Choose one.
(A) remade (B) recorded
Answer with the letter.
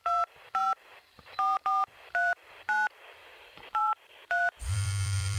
A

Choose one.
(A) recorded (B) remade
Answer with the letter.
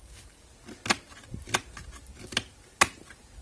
A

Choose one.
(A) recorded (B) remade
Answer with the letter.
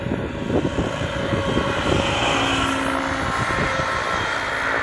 A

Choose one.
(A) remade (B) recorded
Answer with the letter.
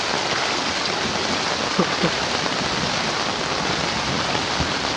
B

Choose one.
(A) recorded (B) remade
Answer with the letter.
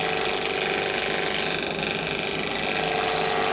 A